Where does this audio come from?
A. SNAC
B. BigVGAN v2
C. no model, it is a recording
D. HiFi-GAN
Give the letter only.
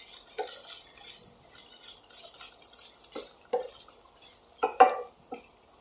C